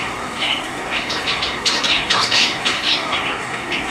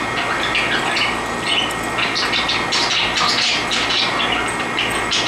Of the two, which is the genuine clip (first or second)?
second